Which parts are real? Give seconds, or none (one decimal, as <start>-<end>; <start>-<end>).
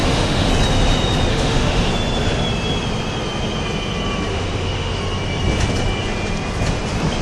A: 0.5-1.3; 1.9-4.3; 5.0-7.2